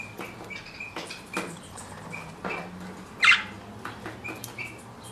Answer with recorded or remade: recorded